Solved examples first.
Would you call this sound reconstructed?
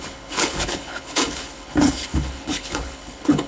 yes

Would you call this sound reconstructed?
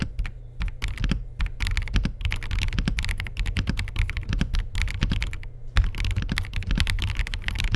no